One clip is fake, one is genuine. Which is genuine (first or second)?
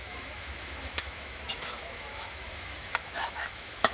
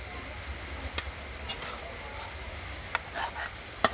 second